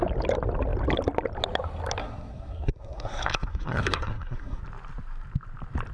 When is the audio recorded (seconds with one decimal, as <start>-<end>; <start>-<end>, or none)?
0.0-2.0; 4.6-5.9